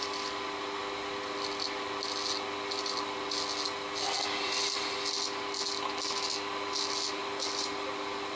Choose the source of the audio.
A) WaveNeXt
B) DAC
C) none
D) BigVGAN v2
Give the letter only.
C